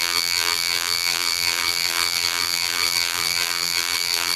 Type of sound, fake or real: fake